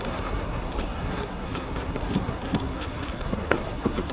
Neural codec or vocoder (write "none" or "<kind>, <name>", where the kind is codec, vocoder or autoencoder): codec, SNAC